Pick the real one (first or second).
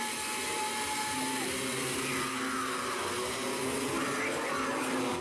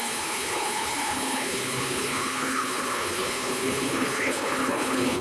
first